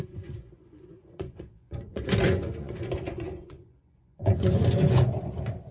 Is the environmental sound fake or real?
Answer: fake